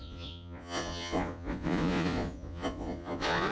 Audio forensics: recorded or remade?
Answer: remade